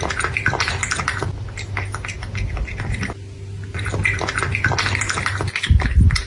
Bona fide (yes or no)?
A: yes